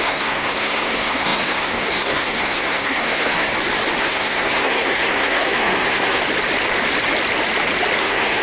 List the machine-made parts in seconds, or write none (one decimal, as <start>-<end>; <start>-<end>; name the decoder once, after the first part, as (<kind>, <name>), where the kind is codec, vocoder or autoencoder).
0.0-3.5 (codec, SNAC); 4.0-6.2; 8.0-8.4